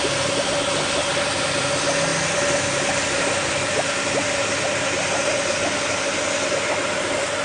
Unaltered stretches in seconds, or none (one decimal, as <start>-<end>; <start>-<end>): 0.0-7.4

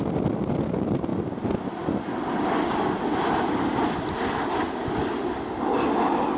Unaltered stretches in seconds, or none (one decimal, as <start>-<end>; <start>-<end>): 0.0-6.4

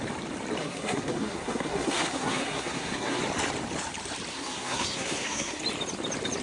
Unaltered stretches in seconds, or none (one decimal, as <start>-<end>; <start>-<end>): 0.0-0.6; 3.2-4.3; 5.6-6.4

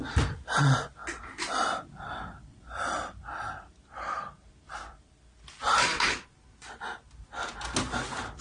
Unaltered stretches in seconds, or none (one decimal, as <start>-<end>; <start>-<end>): 0.0-8.4

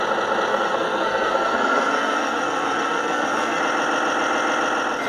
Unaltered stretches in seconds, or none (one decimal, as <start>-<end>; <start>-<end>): 0.0-0.5; 3.6-5.1

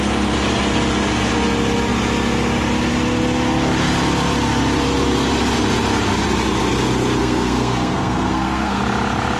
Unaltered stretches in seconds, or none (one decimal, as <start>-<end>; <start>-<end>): 0.0-7.2; 8.8-9.4